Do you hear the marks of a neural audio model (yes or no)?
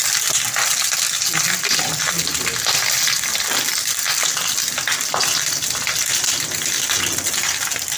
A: no